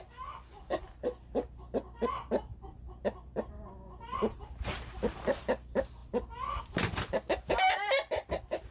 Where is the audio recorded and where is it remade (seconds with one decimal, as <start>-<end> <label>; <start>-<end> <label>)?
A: 0.0-2.5 recorded; 2.5-5.4 remade; 5.4-8.7 recorded